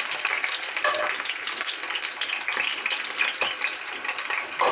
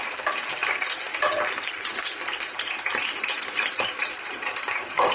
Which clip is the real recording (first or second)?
first